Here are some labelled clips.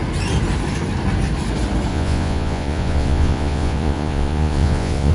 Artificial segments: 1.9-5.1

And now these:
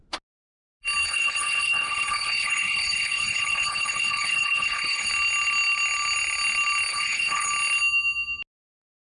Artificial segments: 1.0-5.1; 6.9-7.5

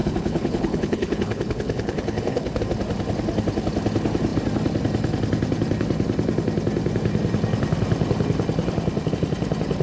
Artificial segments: 0.0-2.6

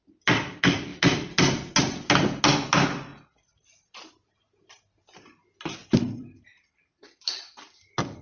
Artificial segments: 3.1-7.0

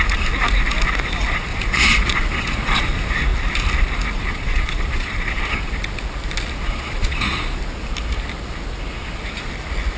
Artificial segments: 1.5-2.8; 4.3-5.3; 6.6-7.6

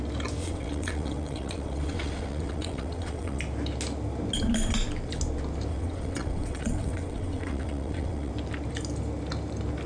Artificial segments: 0.4-3.4; 5.7-8.3

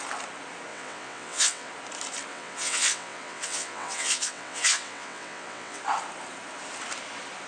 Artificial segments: 0.7-1.7; 2.3-5.8

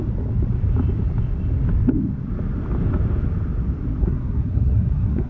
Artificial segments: 4.0-5.3